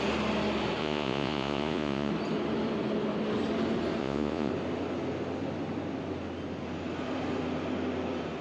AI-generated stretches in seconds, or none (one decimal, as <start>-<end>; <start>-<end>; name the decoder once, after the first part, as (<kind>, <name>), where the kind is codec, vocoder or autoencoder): 0.8-2.1 (vocoder, Vocos); 4.0-4.5